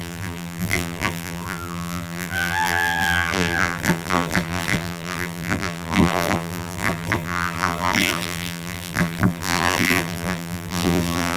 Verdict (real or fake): fake